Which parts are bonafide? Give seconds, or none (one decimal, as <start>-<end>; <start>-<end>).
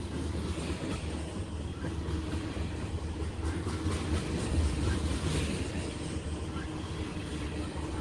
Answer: 0.0-1.7; 6.5-8.0